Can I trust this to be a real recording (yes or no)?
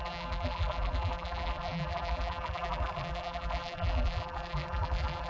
no